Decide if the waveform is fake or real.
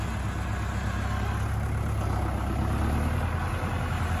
real